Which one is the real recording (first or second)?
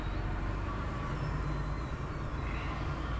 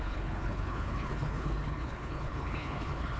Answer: first